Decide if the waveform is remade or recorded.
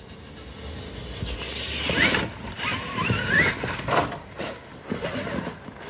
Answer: recorded